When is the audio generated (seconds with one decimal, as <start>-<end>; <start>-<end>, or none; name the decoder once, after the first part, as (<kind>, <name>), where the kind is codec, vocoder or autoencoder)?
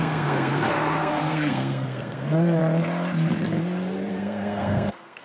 0.0-2.6 (codec, SNAC); 4.1-5.2